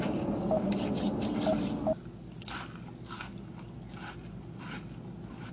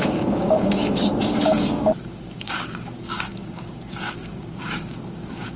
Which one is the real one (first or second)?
first